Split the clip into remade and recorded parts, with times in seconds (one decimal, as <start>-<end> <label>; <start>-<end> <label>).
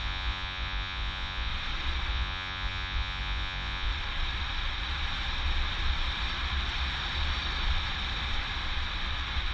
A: 0.0-1.5 remade; 1.5-2.1 recorded; 2.1-3.9 remade; 3.9-9.5 recorded